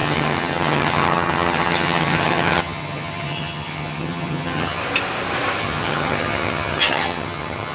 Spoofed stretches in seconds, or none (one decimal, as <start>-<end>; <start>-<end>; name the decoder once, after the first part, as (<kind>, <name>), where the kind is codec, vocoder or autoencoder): 0.0-4.8 (vocoder, HiFi-GAN); 5.6-7.7